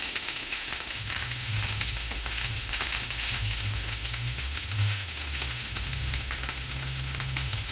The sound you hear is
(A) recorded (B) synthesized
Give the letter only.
B